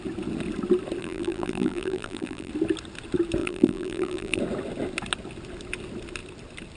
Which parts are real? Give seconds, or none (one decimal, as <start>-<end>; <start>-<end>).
0.0-1.0; 2.5-3.4; 4.4-6.8